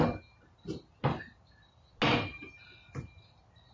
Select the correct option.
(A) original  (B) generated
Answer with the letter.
A